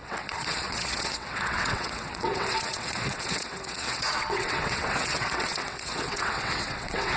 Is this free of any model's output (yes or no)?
no